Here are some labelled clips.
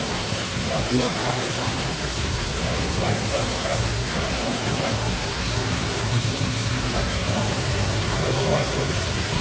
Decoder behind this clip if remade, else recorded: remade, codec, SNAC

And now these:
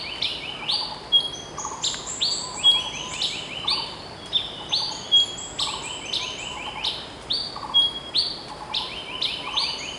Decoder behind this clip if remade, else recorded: recorded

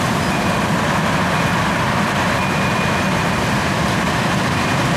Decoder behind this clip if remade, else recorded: recorded